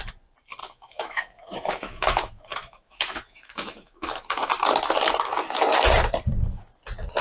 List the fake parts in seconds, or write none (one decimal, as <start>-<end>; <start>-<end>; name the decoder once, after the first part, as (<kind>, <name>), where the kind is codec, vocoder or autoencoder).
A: 0.6-4.5 (autoencoder, DAC-VAE)